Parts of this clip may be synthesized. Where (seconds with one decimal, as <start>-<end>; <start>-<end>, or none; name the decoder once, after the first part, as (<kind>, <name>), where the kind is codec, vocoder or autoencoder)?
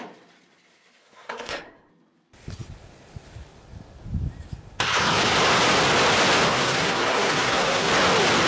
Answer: 1.0-1.9 (codec, SNAC); 6.5-7.9